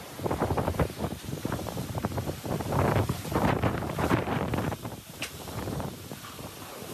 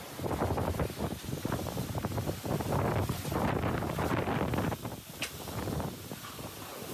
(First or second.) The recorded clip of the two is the second